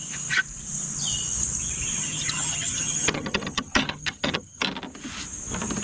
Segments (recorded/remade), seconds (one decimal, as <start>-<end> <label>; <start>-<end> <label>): 0.0-2.0 recorded; 2.0-4.6 remade; 4.6-5.8 recorded